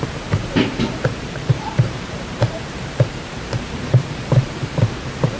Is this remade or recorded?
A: remade